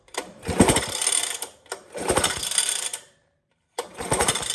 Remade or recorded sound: remade